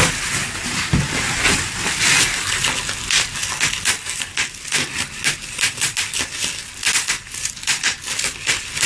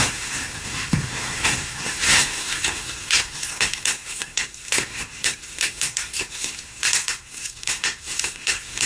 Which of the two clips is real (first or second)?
first